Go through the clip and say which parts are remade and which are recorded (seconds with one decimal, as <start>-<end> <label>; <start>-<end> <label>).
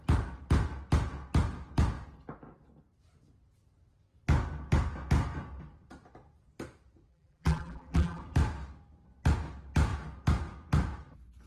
0.0-7.1 recorded; 7.1-8.2 remade; 8.2-11.5 recorded